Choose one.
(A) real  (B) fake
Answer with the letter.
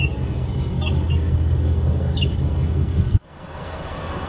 B